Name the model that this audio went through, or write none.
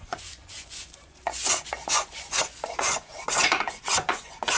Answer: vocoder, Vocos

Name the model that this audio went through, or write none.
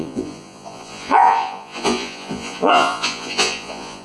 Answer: vocoder, Vocos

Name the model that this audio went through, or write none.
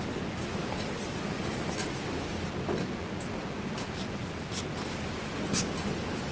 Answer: none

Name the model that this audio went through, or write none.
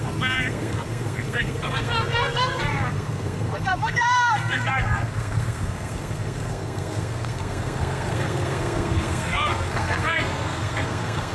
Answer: codec, SNAC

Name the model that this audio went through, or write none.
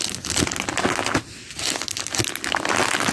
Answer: none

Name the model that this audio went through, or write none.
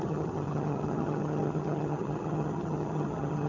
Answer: vocoder, HiFi-GAN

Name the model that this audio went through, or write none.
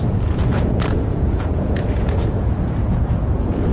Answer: vocoder, Vocos